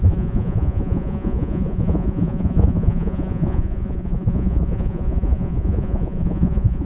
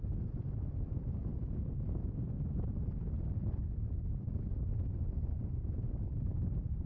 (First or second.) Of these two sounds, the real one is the second